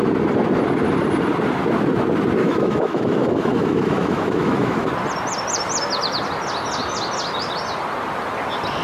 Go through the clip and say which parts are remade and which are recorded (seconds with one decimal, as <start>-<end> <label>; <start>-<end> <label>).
0.0-2.4 recorded; 2.4-4.9 remade; 4.9-8.8 recorded